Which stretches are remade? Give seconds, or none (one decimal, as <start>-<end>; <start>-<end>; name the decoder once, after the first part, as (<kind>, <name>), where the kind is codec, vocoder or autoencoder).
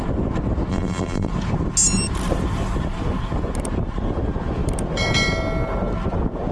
0.7-1.3 (vocoder, BigVGAN v2)